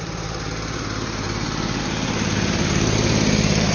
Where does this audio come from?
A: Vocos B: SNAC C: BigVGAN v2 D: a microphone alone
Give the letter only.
C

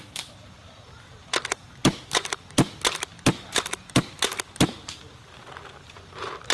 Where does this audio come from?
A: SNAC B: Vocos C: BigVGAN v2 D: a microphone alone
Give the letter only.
C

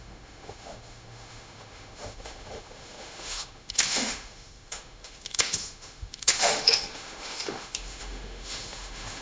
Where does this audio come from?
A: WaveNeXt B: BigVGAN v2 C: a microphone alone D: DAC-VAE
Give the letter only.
D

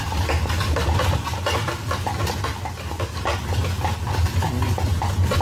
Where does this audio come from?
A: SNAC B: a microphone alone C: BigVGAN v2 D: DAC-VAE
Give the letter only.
B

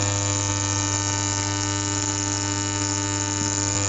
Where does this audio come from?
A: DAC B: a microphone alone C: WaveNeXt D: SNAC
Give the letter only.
B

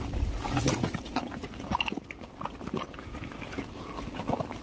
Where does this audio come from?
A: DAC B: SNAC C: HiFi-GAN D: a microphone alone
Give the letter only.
D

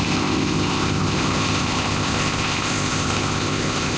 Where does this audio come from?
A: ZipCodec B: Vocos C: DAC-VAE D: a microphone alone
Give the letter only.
A